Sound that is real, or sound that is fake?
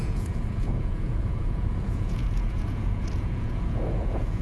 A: fake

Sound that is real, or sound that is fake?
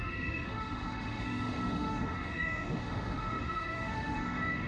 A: fake